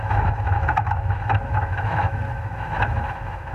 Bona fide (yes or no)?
no